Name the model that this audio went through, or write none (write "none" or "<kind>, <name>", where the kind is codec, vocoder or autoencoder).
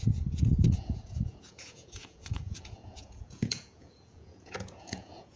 vocoder, Vocos